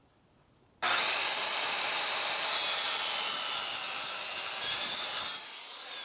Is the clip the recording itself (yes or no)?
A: yes